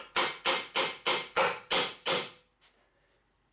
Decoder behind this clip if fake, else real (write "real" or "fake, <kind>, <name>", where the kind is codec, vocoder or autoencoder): real